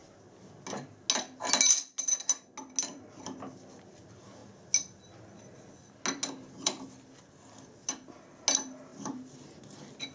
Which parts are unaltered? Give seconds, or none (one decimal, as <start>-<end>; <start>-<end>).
0.0-8.9; 9.6-10.1